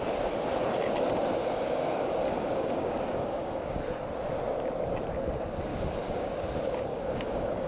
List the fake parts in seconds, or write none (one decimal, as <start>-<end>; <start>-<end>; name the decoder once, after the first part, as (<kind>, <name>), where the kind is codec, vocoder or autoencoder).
1.4-3.8 (codec, DAC); 5.7-6.3; 6.9-7.7